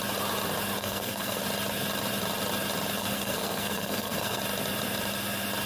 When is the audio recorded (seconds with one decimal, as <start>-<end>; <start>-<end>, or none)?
0.0-0.8; 1.4-3.0; 4.4-5.7